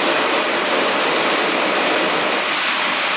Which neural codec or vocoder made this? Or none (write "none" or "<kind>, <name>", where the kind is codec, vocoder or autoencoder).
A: none